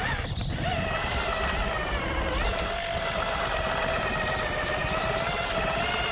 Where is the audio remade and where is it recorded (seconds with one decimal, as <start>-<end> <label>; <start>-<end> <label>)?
0.0-6.1 recorded